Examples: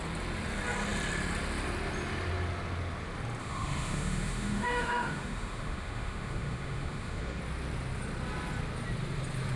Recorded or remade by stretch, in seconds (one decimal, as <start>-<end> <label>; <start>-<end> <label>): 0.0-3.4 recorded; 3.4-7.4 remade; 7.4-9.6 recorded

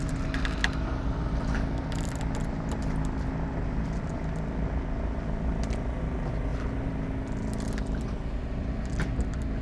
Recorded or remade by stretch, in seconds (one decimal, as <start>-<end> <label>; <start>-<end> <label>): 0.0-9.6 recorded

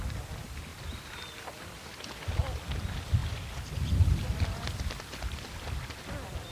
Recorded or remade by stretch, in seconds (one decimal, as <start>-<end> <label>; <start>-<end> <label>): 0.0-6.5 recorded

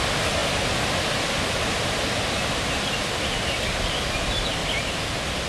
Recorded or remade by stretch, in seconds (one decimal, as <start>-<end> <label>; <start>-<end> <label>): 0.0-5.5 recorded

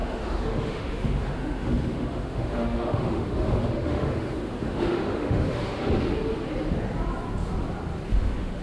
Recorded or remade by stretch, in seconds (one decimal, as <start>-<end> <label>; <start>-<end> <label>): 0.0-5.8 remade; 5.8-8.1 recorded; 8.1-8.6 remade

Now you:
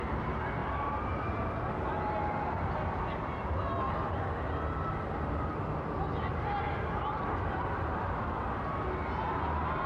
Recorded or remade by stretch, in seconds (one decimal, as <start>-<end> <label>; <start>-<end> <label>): 0.0-9.9 recorded